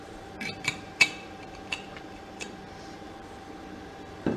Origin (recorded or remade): remade